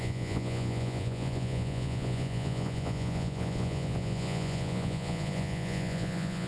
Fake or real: fake